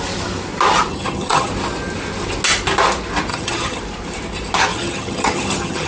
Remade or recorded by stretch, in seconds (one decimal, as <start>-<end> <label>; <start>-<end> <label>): 0.0-0.9 recorded; 0.9-1.5 remade; 1.5-3.3 recorded; 3.3-3.8 remade; 3.8-4.7 recorded; 4.7-5.9 remade